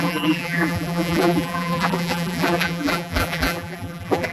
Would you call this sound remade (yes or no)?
yes